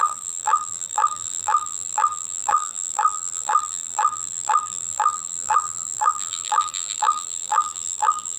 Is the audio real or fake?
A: fake